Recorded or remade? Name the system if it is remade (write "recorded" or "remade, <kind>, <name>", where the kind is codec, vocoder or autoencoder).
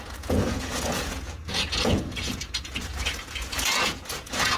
remade, vocoder, Vocos